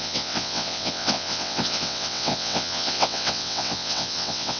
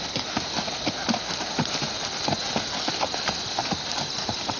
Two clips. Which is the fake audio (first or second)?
first